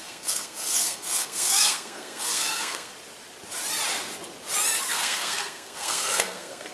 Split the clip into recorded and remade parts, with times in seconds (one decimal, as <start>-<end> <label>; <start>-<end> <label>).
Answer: 0.0-2.9 remade; 2.9-4.9 recorded; 4.9-6.7 remade